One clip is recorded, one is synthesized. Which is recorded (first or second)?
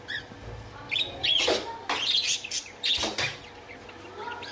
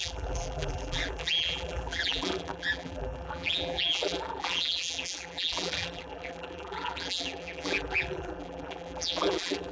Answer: first